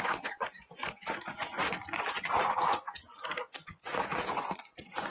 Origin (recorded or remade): remade